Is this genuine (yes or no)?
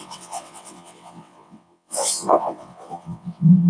no